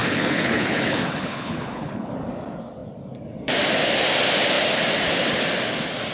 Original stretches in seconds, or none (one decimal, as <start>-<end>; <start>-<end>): 2.1-6.1